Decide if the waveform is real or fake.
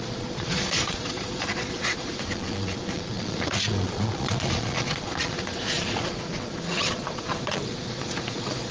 fake